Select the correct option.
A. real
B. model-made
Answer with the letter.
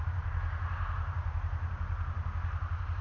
A